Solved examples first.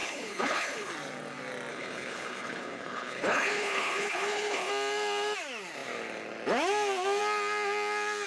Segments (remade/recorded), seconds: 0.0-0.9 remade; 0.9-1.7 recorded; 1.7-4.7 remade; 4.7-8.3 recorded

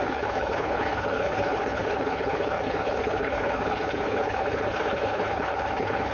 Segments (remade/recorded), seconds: 0.0-6.1 remade

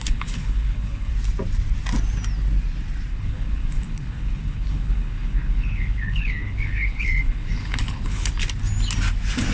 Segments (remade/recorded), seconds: 0.0-1.1 remade; 1.1-3.1 recorded; 3.1-8.3 remade; 8.3-9.5 recorded

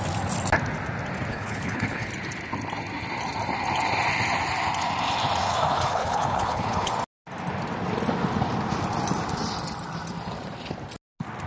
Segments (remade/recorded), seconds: 0.0-1.3 recorded; 1.3-2.1 remade; 2.1-5.7 recorded; 5.7-6.9 remade; 6.9-11.5 recorded

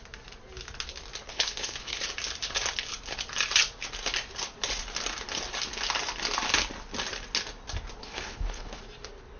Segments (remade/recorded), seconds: 0.0-1.3 recorded; 1.3-2.0 remade; 2.0-8.0 recorded; 8.0-8.8 remade; 8.8-9.4 recorded

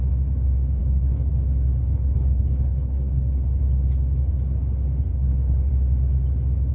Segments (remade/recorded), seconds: 0.0-0.8 recorded; 0.8-3.6 remade; 3.6-5.1 recorded; 5.1-5.7 remade; 5.7-6.7 recorded

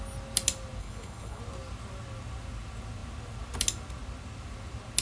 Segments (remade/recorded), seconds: 0.0-0.8 recorded; 0.8-1.4 remade; 1.4-5.0 recorded